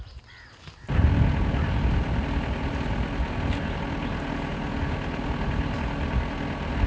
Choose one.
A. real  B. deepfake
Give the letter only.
A